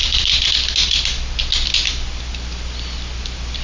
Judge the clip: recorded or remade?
recorded